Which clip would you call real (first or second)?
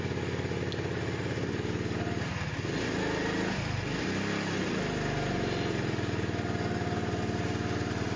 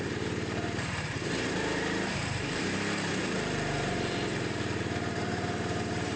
first